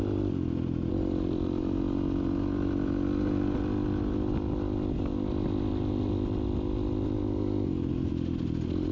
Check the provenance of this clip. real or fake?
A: real